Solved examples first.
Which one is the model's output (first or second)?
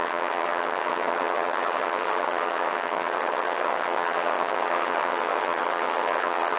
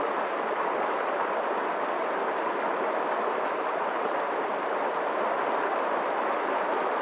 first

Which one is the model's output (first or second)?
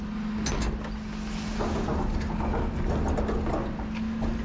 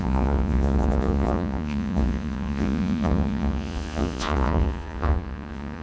second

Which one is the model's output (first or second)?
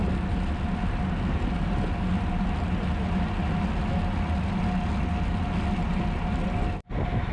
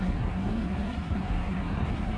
second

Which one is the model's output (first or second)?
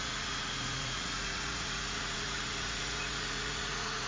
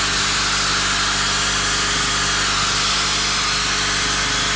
first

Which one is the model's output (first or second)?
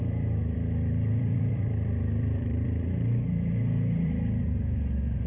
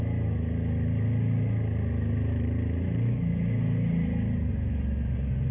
first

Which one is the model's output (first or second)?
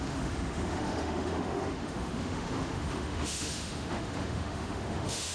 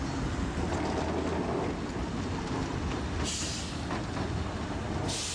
first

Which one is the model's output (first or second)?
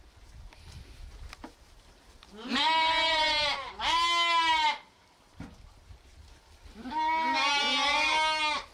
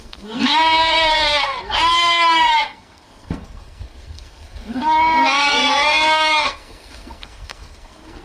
second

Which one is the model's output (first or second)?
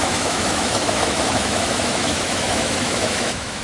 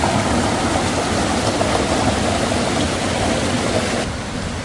first